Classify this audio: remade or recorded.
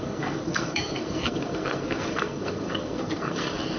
remade